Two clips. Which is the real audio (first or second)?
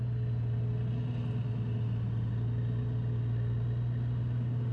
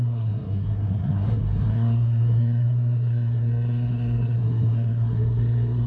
first